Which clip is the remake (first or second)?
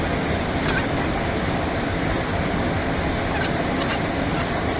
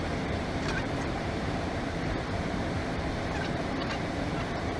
second